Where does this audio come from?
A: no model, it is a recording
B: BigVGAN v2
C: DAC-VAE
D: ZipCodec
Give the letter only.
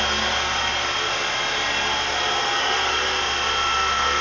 A